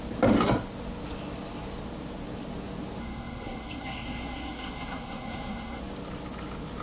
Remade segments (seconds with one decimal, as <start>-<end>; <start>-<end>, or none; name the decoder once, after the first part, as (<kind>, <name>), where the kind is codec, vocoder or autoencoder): 3.0-5.8 (codec, SNAC)